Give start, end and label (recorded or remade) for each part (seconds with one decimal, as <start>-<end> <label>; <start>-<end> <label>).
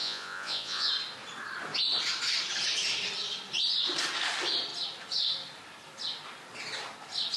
0.0-0.9 remade; 0.9-7.4 recorded